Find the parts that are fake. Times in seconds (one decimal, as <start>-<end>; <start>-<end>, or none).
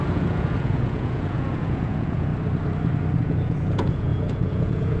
0.0-2.3; 3.2-5.0